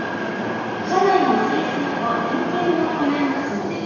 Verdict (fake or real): real